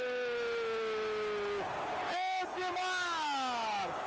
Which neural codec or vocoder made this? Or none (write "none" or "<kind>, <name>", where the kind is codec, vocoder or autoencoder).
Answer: none